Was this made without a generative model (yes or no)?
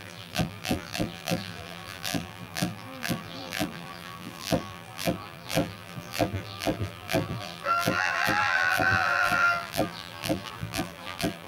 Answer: no